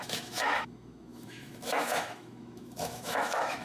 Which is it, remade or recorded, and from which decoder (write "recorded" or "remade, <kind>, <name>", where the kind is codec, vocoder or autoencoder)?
remade, autoencoder, DAC-VAE